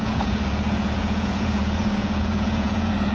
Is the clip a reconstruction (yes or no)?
yes